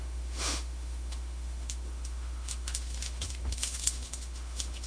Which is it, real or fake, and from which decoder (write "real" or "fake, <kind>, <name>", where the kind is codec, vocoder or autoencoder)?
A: fake, autoencoder, DAC-VAE